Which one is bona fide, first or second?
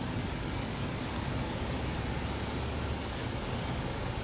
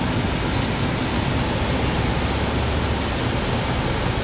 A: second